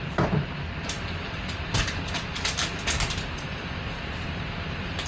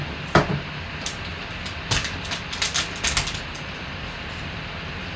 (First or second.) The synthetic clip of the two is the first